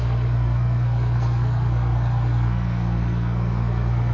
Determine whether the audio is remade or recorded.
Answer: remade